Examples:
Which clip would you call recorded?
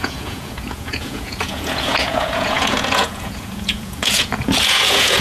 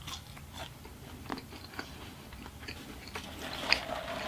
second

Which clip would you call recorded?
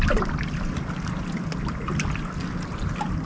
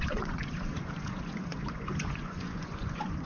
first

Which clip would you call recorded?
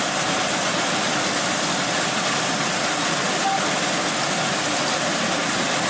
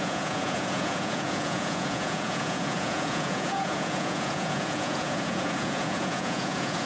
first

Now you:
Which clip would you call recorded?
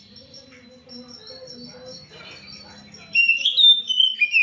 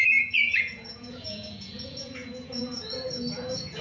first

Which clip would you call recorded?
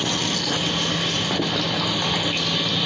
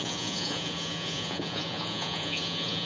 first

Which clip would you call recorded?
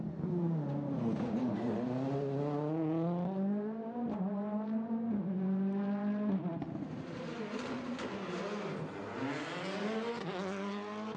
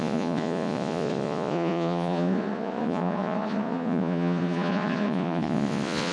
first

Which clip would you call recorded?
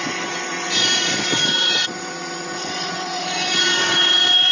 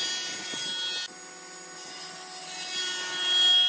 second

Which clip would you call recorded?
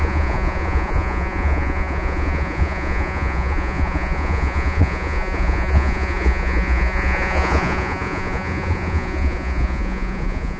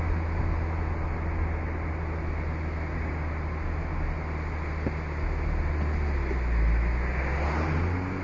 second